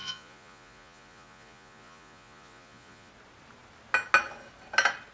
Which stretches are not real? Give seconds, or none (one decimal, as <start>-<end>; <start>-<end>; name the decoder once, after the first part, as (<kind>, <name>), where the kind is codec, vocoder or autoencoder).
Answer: 0.0-3.1 (vocoder, Vocos)